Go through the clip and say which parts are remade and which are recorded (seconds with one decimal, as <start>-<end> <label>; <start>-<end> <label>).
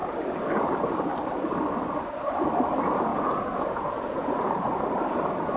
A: 0.0-3.1 recorded; 3.1-4.5 remade; 4.5-5.6 recorded